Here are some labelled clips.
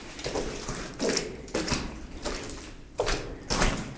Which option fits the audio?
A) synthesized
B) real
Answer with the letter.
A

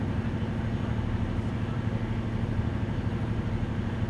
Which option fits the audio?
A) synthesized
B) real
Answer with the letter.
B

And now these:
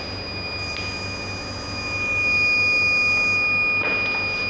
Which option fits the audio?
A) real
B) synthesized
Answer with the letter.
A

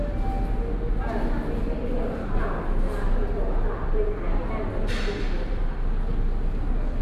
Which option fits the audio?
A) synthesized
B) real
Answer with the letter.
B